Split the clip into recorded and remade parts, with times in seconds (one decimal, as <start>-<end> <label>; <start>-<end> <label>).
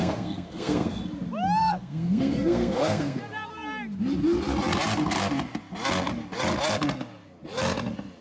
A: 0.0-1.0 remade; 1.0-1.6 recorded; 1.6-3.2 remade; 3.2-8.2 recorded